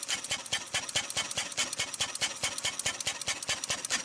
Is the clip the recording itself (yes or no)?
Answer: yes